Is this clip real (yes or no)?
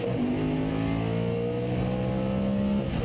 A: yes